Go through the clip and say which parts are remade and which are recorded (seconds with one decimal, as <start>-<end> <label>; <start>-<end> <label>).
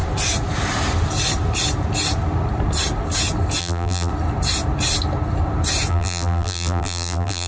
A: 0.0-3.6 recorded; 3.6-4.1 remade; 4.1-5.9 recorded; 5.9-7.5 remade